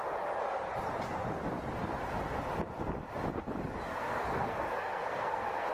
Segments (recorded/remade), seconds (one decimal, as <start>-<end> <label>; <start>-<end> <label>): 0.0-3.9 recorded; 3.9-5.7 remade